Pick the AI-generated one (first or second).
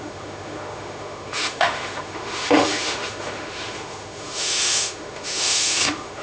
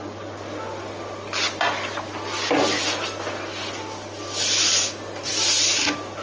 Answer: first